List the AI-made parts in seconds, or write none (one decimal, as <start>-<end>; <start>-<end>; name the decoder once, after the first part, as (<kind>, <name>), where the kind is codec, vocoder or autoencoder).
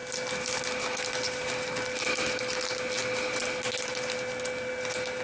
none